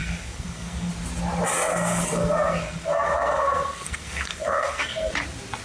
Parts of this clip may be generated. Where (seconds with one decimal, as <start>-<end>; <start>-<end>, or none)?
0.0-0.9; 1.7-5.1